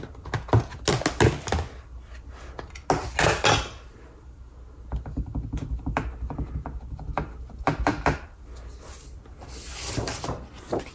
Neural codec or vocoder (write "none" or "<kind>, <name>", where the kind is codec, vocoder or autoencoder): none